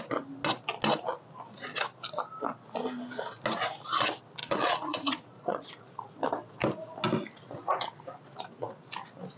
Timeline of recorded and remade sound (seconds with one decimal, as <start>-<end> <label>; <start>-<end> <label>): 0.0-4.4 recorded; 4.4-5.7 remade; 5.7-9.4 recorded